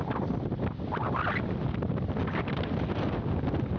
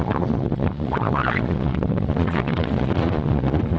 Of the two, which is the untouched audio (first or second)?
first